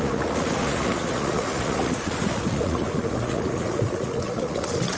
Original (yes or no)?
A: no